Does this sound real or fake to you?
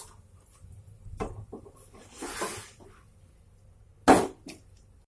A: real